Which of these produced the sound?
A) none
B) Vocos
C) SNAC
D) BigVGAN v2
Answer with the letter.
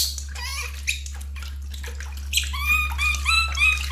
A